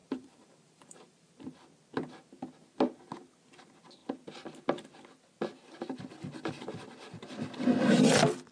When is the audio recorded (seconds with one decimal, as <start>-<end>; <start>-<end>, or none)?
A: 1.4-8.5